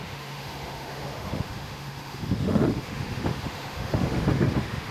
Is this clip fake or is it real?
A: fake